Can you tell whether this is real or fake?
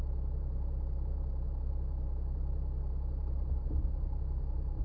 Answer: real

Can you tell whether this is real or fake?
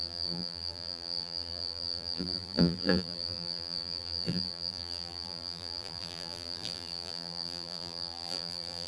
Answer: fake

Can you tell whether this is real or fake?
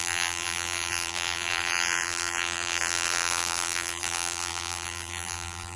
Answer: fake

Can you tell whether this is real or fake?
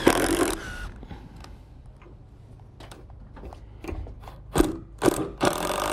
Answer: real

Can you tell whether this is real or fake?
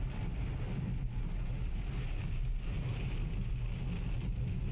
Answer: real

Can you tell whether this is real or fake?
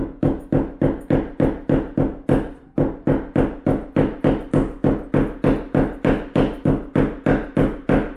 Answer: real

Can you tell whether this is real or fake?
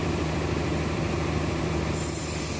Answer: fake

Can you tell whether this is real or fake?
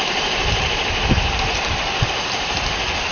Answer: fake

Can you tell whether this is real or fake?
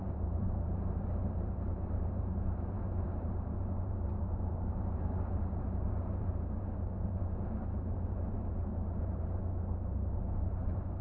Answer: fake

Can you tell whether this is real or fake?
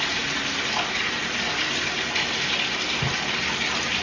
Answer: real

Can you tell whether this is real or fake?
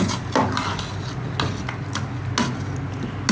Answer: real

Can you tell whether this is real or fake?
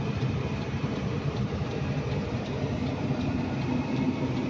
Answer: fake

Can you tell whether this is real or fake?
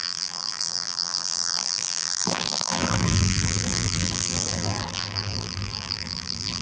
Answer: fake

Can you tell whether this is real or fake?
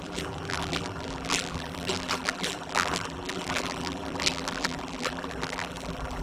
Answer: fake